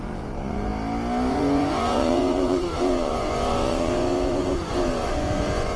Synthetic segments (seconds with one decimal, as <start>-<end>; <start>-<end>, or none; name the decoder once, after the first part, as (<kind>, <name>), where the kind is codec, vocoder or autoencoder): 0.0-0.7 (vocoder, Vocos); 1.3-5.8